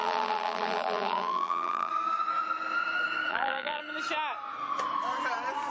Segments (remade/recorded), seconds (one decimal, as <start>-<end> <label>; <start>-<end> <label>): 0.0-1.9 remade; 1.9-3.3 recorded; 3.3-3.8 remade; 3.8-5.7 recorded